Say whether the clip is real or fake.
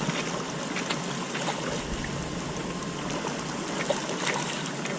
real